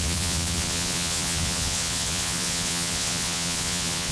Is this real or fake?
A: fake